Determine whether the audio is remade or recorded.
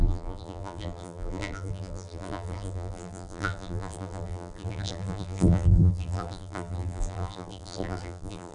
remade